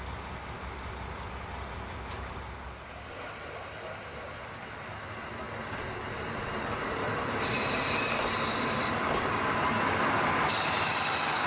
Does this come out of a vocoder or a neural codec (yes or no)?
no